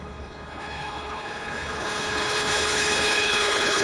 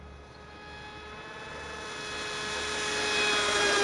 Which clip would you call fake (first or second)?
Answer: first